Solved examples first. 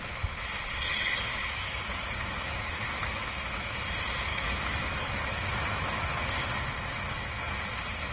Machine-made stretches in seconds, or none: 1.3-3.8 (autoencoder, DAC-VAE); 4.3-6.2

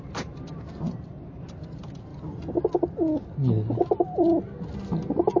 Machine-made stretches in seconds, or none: none

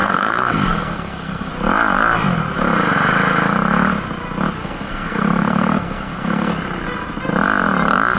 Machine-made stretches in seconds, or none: 0.0-1.5 (codec, SNAC); 4.6-6.5

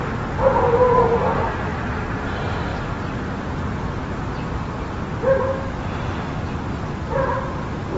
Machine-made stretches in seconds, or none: none

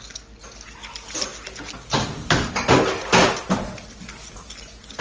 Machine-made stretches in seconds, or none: none

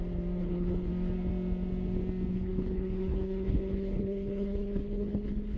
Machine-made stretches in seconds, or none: 0.4-0.9 (codec, HILCodec); 2.3-5.6

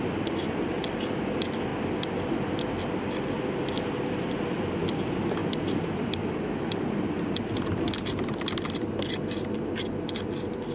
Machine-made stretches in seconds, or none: none

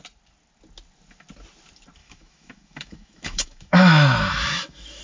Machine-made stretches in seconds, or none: 2.0-5.0 (autoencoder, DAC-VAE)